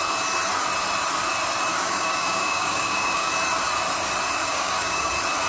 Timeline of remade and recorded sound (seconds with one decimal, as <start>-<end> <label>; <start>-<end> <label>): 0.0-1.7 recorded; 1.7-3.3 remade; 3.3-4.4 recorded; 4.4-5.1 remade; 5.1-5.5 recorded